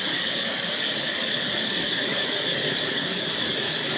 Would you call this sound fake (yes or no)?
yes